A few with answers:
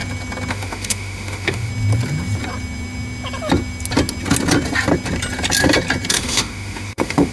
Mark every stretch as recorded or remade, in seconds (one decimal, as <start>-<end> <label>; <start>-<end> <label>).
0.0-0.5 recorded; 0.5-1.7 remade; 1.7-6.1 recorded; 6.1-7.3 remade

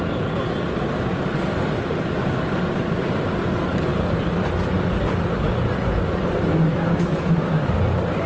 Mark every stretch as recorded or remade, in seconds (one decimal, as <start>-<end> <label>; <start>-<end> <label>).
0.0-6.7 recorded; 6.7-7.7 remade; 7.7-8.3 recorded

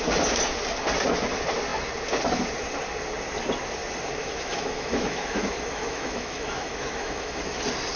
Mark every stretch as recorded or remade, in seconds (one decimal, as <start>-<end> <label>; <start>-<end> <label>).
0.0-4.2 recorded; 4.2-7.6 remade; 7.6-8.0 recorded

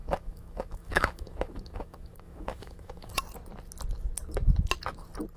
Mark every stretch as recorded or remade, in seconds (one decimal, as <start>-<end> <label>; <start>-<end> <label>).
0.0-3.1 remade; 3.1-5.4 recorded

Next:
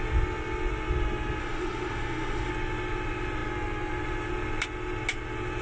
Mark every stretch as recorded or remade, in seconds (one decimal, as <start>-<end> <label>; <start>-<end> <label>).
0.0-1.4 recorded; 1.4-2.5 remade; 2.5-5.6 recorded